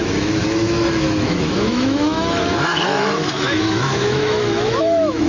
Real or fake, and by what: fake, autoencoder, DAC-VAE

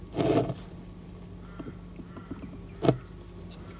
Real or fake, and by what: real